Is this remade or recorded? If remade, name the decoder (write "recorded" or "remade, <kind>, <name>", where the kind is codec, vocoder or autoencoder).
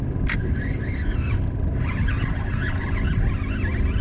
recorded